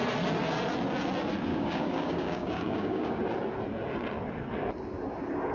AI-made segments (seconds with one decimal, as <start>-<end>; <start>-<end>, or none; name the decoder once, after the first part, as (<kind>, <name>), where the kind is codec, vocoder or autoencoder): 1.5-3.2 (codec, DAC)